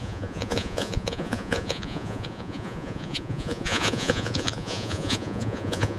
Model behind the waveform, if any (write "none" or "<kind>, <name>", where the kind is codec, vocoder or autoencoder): vocoder, Vocos